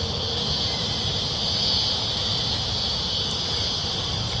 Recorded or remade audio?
recorded